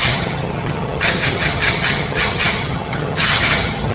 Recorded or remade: remade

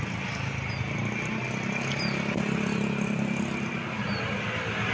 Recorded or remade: recorded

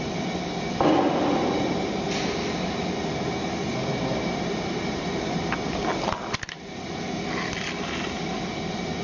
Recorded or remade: recorded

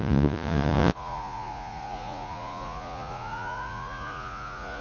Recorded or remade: remade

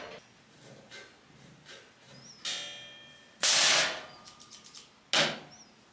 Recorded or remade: recorded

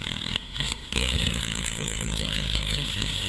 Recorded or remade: remade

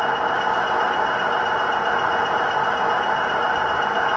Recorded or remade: recorded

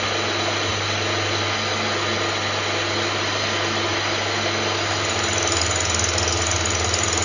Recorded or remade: recorded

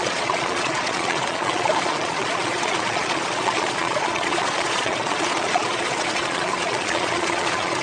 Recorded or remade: remade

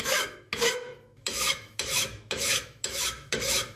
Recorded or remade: remade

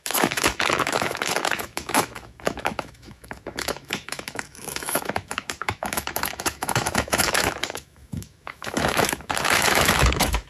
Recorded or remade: remade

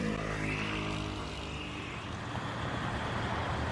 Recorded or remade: remade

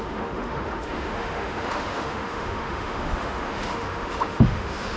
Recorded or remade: remade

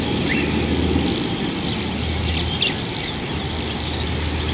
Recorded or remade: recorded